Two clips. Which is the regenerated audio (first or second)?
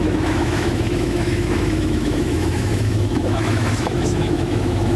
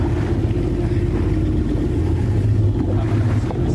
first